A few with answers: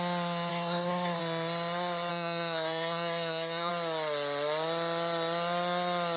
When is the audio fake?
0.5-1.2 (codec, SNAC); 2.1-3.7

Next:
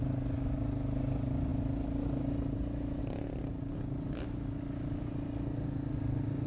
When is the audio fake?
none

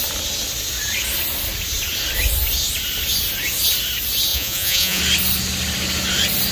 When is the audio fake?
4.3-5.0 (vocoder, Vocos)

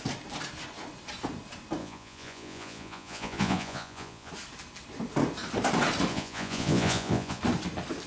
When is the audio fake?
1.8-4.3 (vocoder, Vocos); 6.1-7.4